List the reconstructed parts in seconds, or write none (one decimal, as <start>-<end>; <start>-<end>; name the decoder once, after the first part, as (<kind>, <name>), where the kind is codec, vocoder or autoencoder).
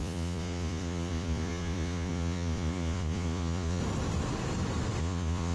0.0-3.8 (vocoder, Vocos); 5.0-5.5